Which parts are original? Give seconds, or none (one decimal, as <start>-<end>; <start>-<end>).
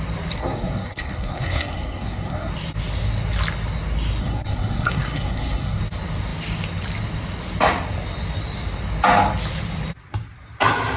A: 0.0-0.4; 2.5-4.2; 5.8-11.0